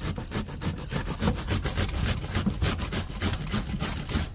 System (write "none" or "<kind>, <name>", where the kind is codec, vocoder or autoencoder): none